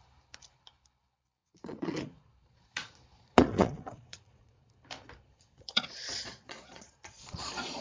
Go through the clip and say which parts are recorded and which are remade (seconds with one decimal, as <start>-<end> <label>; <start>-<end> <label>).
0.0-1.4 recorded; 1.4-4.7 remade; 4.7-5.3 recorded; 5.3-7.8 remade